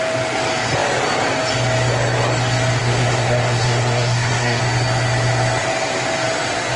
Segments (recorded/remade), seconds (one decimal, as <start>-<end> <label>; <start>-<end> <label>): 0.0-2.8 recorded; 2.8-4.6 remade; 4.6-6.8 recorded